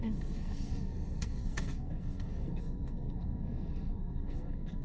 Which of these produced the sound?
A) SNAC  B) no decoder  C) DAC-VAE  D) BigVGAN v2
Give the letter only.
A